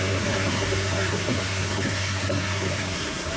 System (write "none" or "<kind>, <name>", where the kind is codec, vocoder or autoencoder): codec, SNAC